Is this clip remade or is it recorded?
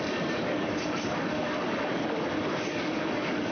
remade